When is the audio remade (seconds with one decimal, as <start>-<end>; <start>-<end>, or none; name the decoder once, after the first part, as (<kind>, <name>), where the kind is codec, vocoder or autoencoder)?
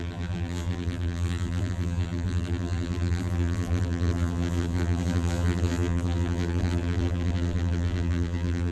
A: 0.0-8.7 (vocoder, BigVGAN v2)